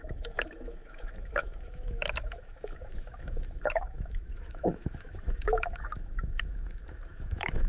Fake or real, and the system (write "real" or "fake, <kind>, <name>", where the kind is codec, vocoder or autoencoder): fake, autoencoder, DAC-VAE